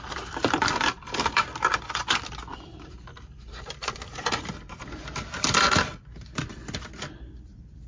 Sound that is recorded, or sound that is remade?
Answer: remade